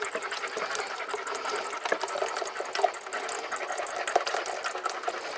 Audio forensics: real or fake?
real